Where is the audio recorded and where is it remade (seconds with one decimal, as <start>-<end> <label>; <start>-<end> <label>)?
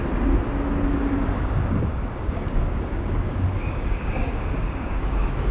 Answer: 0.0-0.9 recorded; 0.9-5.5 remade